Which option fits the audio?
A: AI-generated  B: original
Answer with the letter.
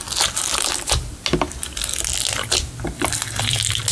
B